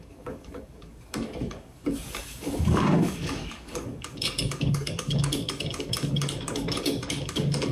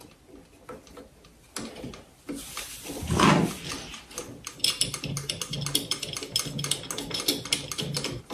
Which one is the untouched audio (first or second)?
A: second